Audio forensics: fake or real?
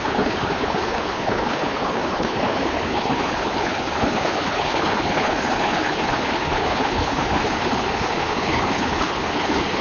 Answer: fake